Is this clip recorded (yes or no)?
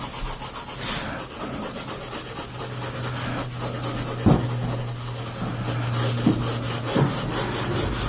yes